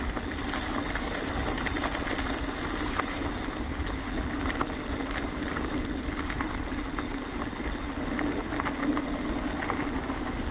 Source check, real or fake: real